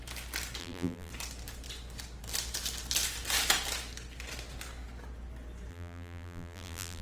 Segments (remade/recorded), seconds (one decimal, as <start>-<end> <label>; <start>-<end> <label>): 0.0-0.6 recorded; 0.6-1.1 remade; 1.1-5.7 recorded; 5.7-7.0 remade